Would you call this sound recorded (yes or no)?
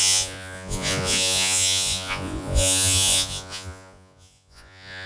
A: no